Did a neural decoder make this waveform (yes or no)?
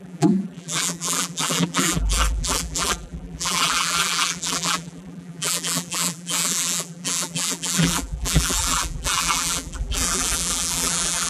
yes